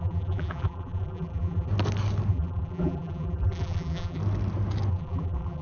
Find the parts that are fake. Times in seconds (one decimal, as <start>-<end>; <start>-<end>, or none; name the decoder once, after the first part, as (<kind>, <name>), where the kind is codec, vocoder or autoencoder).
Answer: 0.0-1.7 (vocoder, BigVGAN v2); 2.3-4.2; 4.9-5.6